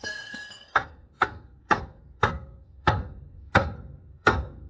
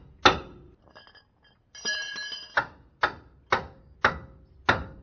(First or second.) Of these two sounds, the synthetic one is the first